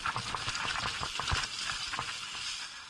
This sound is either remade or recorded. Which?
recorded